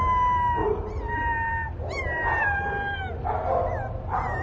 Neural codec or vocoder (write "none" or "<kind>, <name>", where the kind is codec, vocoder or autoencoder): none